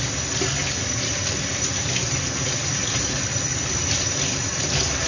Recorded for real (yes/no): yes